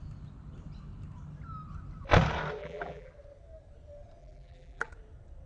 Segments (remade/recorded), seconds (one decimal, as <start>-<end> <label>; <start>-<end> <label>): 0.0-2.6 recorded; 2.6-3.1 remade; 3.1-4.2 recorded; 4.2-4.9 remade; 4.9-5.5 recorded